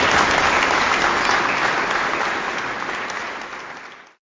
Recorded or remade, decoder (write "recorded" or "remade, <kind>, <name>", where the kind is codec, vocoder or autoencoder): recorded